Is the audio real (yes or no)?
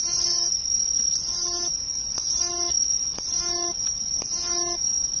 yes